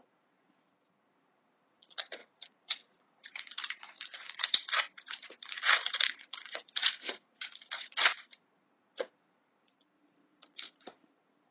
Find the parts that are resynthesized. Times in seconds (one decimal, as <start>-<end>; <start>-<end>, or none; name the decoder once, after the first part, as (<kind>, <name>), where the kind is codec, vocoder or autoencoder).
0.0-11.5 (vocoder, Vocos)